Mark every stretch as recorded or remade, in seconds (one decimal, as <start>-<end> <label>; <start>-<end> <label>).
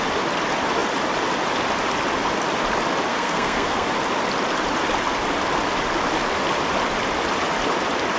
0.0-3.1 recorded; 3.1-3.9 remade; 3.9-8.2 recorded